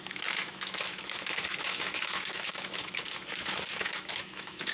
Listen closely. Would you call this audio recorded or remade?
remade